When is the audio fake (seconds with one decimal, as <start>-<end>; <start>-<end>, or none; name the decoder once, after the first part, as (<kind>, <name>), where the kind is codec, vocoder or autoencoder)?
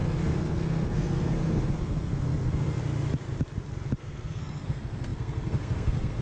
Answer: 0.0-2.8 (codec, SNAC); 4.0-6.2